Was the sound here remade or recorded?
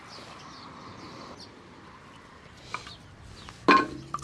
recorded